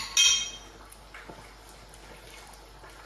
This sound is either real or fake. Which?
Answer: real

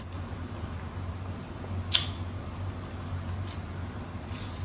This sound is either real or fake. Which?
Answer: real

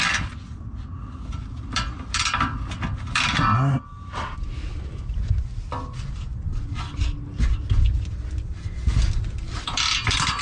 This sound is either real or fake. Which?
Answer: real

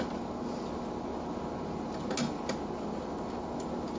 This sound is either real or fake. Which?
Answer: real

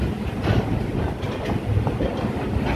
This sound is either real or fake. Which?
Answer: real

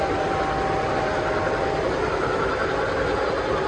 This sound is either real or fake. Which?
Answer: real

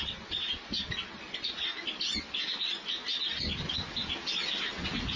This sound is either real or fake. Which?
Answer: real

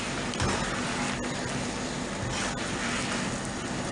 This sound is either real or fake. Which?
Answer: real